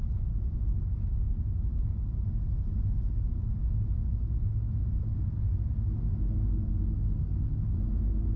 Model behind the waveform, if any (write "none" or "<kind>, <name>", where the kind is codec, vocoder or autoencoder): none